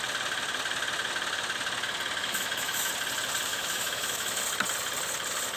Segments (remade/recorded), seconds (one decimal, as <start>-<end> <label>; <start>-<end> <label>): 0.0-2.2 recorded; 2.2-2.9 remade; 2.9-3.5 recorded; 3.5-4.4 remade; 4.4-5.6 recorded